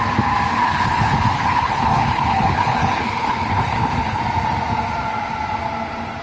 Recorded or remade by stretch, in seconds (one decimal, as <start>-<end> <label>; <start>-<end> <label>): 0.0-0.5 recorded; 0.5-4.2 remade; 4.2-6.2 recorded